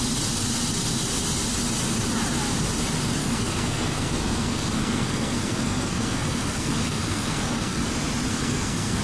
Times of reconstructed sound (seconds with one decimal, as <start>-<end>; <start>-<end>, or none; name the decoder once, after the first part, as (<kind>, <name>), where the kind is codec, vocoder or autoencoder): 3.2-7.9 (codec, SNAC); 8.3-9.0